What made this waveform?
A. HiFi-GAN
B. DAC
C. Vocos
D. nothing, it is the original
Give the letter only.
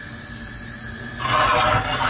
D